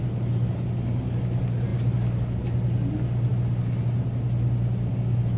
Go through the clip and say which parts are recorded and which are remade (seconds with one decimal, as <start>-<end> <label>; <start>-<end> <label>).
0.0-5.4 recorded